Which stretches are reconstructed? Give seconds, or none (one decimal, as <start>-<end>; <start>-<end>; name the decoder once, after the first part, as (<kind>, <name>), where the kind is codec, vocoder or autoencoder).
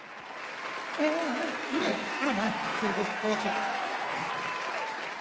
1.2-4.3 (codec, SNAC)